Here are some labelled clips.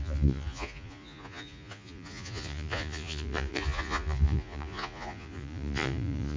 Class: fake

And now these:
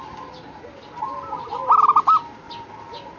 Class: real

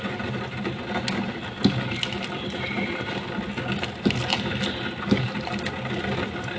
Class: real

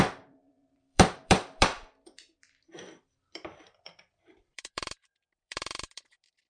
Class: fake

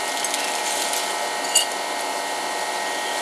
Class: real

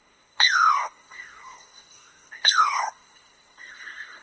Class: fake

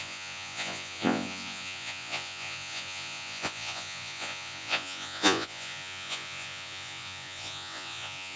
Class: fake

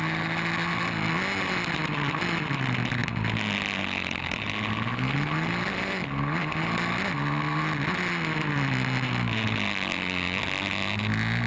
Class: real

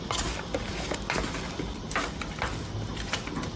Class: real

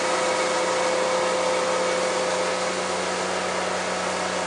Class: real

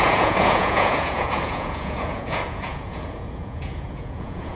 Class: fake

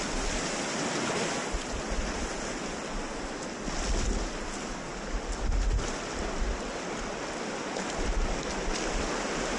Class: real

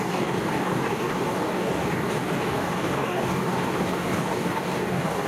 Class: fake